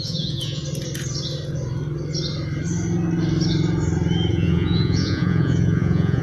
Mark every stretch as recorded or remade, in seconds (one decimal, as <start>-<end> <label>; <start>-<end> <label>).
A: 0.0-0.6 remade; 0.6-4.3 recorded; 4.3-6.2 remade